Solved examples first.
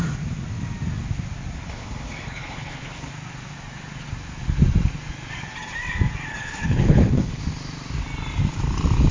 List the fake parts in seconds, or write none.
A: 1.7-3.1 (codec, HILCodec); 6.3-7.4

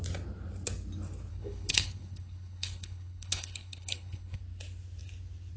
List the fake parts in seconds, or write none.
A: 1.3-4.4 (codec, HILCodec)

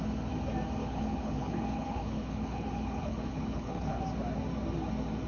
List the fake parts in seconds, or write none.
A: 0.8-4.0 (codec, HILCodec)

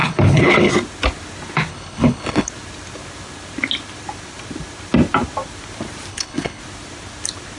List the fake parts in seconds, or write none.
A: 0.0-0.7 (codec, HILCodec); 1.7-2.5; 6.1-6.6